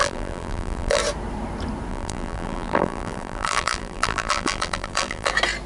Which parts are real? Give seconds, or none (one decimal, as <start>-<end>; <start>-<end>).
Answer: 1.0-1.9; 5.3-5.7